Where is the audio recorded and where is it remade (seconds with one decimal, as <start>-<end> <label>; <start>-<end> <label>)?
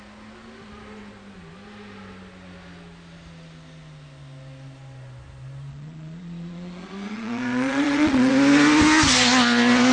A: 0.0-5.7 recorded; 5.7-8.3 remade; 8.3-9.9 recorded